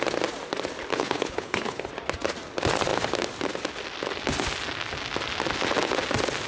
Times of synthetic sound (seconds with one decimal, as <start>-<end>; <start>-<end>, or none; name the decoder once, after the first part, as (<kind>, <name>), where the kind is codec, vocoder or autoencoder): 0.9-1.9 (codec, HILCodec)